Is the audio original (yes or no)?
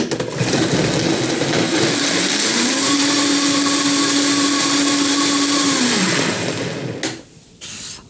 yes